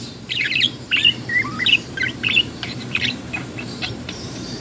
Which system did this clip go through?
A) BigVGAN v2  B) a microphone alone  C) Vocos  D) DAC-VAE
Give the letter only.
A